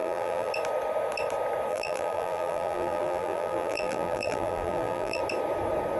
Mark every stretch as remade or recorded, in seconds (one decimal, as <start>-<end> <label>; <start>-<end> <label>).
0.0-0.5 remade; 0.5-1.7 recorded; 1.7-5.2 remade; 5.2-6.0 recorded